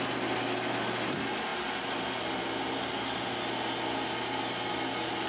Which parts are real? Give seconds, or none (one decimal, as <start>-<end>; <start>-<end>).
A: 0.0-5.3